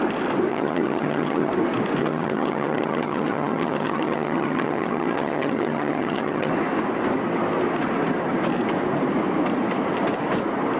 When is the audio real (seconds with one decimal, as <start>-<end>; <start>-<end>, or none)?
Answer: 0.0-0.5; 1.5-2.0; 6.5-10.8